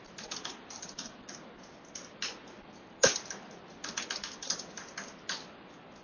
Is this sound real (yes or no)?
yes